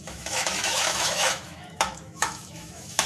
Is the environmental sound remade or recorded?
remade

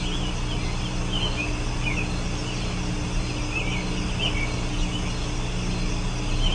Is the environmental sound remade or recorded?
recorded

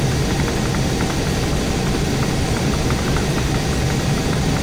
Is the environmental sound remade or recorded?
recorded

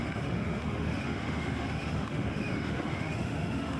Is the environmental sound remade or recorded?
remade